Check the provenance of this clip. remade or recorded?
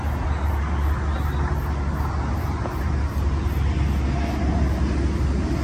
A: recorded